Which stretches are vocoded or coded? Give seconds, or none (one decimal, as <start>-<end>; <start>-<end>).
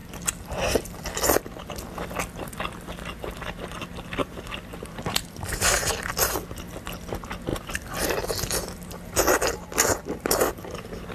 0.0-1.0; 4.2-6.1; 7.5-8.2